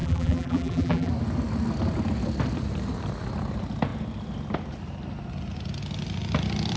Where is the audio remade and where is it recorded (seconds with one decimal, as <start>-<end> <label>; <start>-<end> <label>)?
0.0-1.1 remade; 1.1-6.8 recorded